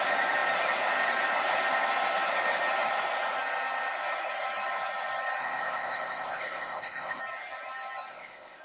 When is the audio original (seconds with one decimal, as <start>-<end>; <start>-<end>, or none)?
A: 0.0-5.4; 7.2-8.1